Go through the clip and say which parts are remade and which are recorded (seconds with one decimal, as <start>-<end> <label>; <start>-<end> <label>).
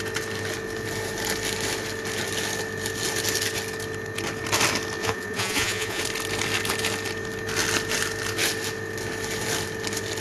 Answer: 0.0-5.0 recorded; 5.0-6.0 remade; 6.0-10.2 recorded